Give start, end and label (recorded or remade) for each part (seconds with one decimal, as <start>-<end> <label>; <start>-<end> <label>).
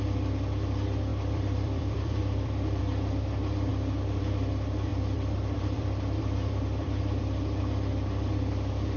0.0-1.1 recorded; 1.1-2.8 remade; 2.8-4.9 recorded; 4.9-7.6 remade; 7.6-9.0 recorded